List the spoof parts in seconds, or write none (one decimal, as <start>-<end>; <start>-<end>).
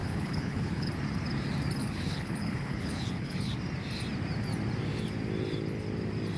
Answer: 0.0-0.9; 1.8-3.5